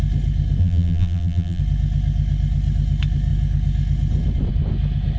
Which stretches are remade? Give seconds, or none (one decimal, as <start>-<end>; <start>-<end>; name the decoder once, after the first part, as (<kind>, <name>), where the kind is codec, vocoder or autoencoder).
0.6-1.6 (vocoder, BigVGAN v2)